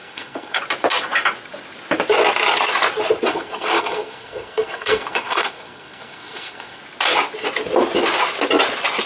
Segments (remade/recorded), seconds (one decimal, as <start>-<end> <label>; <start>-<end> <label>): 0.0-0.6 remade; 0.6-3.3 recorded; 3.3-6.8 remade; 6.8-9.1 recorded